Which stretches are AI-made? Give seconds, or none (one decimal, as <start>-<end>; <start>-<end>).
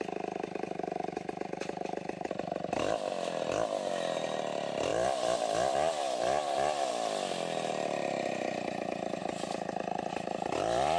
0.0-4.9; 6.9-9.2; 10.1-11.0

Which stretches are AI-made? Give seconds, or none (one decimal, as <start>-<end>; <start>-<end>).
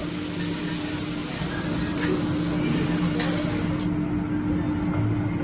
none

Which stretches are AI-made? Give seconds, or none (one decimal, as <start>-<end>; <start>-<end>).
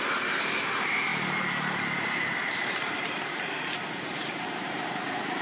0.0-5.4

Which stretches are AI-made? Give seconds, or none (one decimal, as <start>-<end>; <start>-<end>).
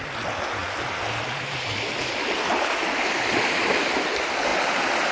0.6-2.8; 4.5-5.1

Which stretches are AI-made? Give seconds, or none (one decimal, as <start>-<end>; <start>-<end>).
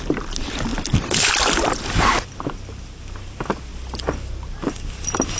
none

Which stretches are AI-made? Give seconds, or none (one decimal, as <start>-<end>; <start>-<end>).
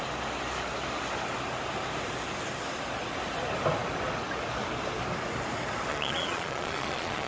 5.9-7.3